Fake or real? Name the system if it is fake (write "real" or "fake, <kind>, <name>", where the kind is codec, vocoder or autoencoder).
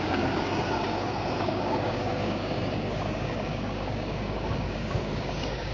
fake, codec, DAC